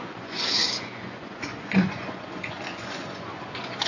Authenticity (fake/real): fake